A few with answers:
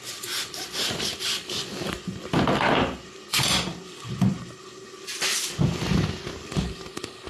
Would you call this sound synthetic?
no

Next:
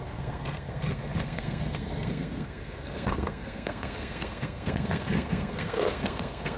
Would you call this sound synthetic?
yes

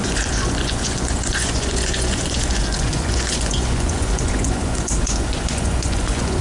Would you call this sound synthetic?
yes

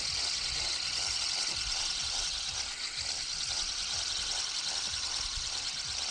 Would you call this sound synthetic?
no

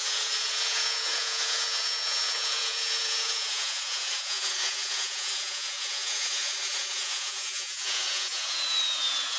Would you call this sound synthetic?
yes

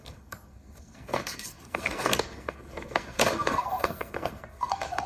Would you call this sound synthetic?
yes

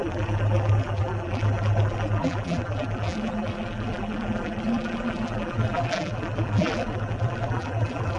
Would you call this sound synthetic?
yes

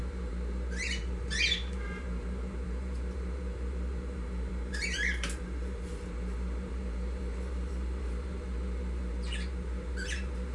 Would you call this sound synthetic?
yes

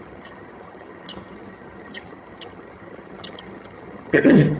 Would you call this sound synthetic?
yes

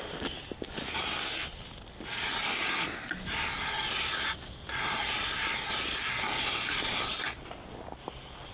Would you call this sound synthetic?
no